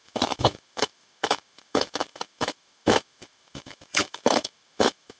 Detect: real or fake fake